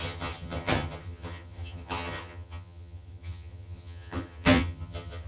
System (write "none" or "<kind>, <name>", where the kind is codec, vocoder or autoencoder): vocoder, HiFi-GAN